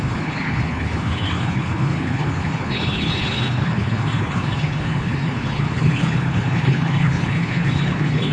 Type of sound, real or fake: fake